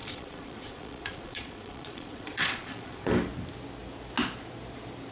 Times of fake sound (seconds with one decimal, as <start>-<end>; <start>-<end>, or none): 0.0-3.1